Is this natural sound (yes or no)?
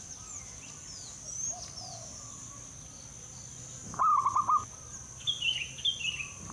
yes